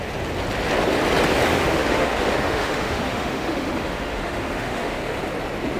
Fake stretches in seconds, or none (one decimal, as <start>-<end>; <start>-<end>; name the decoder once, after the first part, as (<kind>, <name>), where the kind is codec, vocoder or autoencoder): 1.5-5.0 (autoencoder, DAC-VAE)